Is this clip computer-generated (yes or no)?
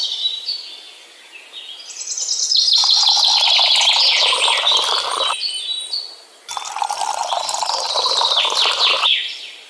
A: no